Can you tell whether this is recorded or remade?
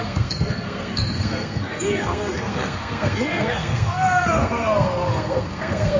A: remade